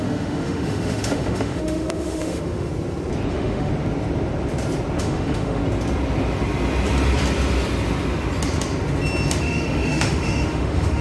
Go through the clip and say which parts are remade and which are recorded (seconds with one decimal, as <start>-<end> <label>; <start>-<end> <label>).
0.0-2.7 remade; 2.7-3.3 recorded; 3.3-3.7 remade; 3.7-5.0 recorded; 5.0-5.6 remade; 5.6-9.4 recorded; 9.4-11.0 remade